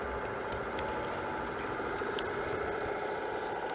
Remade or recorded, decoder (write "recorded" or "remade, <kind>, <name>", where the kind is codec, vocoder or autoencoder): recorded